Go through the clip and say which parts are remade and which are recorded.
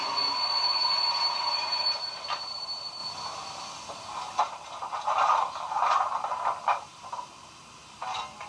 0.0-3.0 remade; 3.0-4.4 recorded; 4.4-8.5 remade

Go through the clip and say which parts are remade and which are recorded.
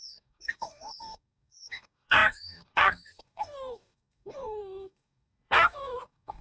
0.0-6.4 remade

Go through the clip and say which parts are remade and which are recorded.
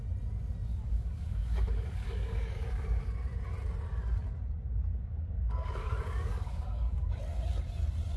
0.0-0.7 recorded; 0.7-3.1 remade; 3.1-4.9 recorded; 4.9-7.2 remade; 7.2-8.2 recorded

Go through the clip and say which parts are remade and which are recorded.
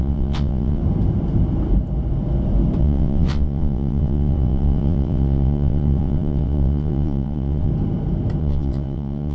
0.0-0.8 remade; 0.8-2.8 recorded; 2.8-7.7 remade; 7.7-8.4 recorded; 8.4-9.3 remade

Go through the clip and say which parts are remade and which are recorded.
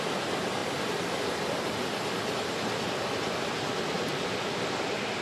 0.0-5.2 recorded